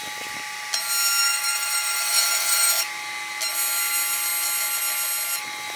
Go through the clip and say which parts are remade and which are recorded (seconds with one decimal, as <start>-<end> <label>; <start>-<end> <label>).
0.0-1.2 recorded; 1.2-2.7 remade; 2.7-5.8 recorded